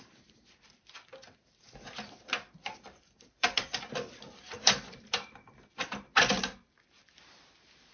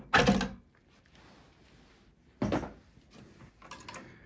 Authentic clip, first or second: second